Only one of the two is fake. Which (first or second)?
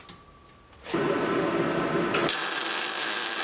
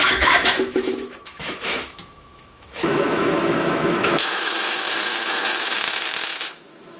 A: second